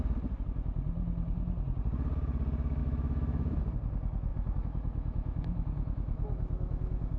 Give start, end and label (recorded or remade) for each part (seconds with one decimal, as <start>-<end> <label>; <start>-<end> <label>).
0.0-2.8 recorded; 2.8-3.6 remade; 3.6-4.3 recorded; 4.3-7.2 remade